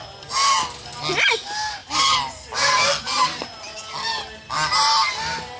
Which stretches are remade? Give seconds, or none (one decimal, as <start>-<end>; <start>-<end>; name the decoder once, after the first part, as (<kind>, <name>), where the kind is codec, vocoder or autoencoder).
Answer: none